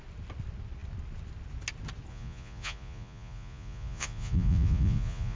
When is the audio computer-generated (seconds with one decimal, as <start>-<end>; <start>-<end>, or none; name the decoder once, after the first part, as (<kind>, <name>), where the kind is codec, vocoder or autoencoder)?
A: 2.1-5.4 (vocoder, Vocos)